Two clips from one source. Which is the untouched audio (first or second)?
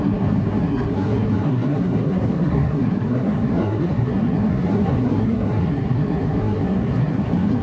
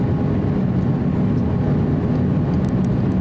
second